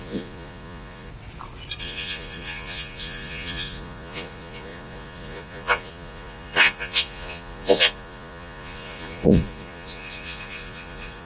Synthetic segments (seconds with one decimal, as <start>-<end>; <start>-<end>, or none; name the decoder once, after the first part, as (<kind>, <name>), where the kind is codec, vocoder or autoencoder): 0.0-1.1 (vocoder, Vocos); 1.8-11.3